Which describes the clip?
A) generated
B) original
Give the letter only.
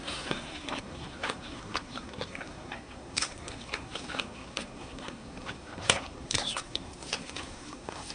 A